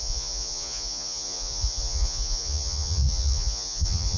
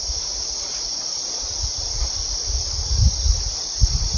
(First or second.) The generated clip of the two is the first